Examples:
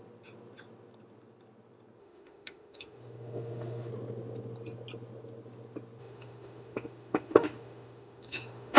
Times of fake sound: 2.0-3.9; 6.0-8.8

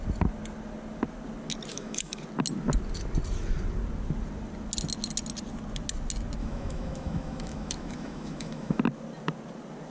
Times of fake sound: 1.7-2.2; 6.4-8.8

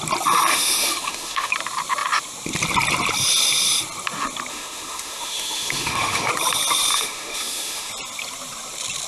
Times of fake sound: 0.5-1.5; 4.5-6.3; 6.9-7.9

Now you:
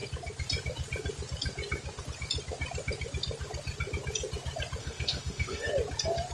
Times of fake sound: 4.8-5.7

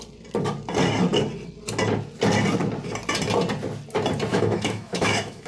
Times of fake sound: 4.3-5.5

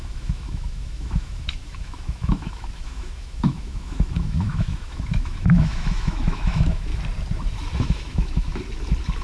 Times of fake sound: 0.0-6.9; 7.8-8.5

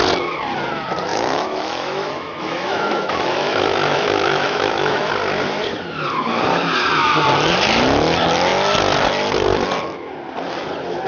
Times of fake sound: 1.1-5.1

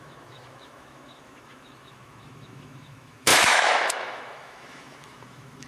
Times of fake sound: 0.0-5.7